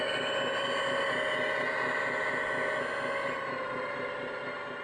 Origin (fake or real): real